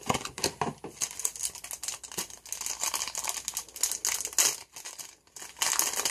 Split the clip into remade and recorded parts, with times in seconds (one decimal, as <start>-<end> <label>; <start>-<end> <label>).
0.0-6.1 recorded